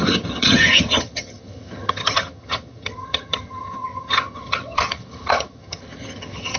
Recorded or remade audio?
remade